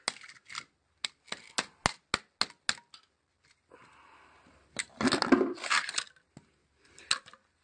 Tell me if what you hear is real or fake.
real